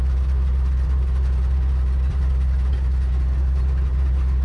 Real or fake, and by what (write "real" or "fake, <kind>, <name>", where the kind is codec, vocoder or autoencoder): real